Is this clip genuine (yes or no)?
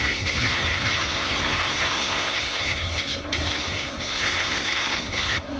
no